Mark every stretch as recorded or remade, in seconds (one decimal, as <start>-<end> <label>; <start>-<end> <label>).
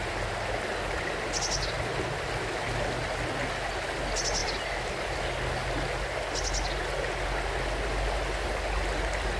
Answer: 0.0-4.4 recorded; 4.4-5.2 remade; 5.2-9.4 recorded